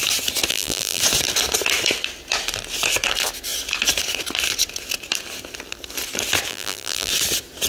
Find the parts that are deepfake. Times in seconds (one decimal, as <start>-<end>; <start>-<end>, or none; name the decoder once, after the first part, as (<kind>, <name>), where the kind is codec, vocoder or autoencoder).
0.5-1.0 (vocoder, BigVGAN v2); 6.5-7.1